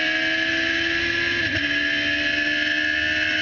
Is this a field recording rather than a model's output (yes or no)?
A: yes